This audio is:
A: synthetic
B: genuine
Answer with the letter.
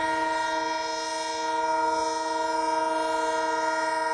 B